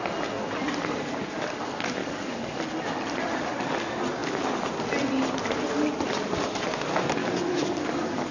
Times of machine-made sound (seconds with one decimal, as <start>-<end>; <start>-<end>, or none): 2.0-2.6; 7.2-8.3